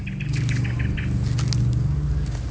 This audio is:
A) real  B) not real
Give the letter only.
A